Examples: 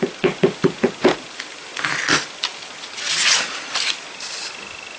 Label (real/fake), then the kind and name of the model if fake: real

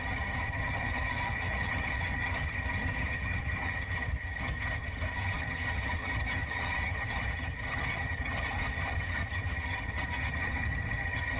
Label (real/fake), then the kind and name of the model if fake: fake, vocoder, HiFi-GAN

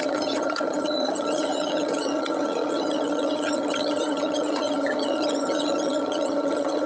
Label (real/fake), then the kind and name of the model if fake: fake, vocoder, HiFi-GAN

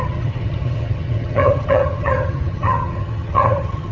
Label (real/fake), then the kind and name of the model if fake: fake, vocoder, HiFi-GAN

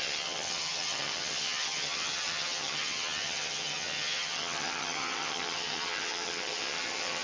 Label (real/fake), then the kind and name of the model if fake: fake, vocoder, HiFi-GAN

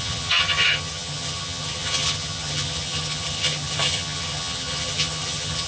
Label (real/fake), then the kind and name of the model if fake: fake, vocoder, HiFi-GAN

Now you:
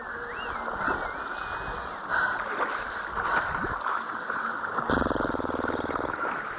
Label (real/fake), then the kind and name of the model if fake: real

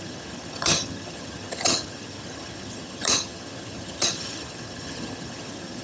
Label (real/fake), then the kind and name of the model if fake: fake, vocoder, HiFi-GAN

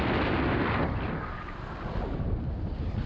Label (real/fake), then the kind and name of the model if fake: real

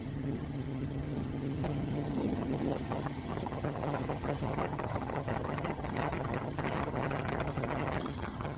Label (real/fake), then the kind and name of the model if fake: fake, vocoder, HiFi-GAN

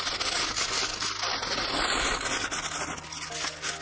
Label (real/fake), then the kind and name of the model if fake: real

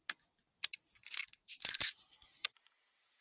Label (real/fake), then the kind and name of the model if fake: real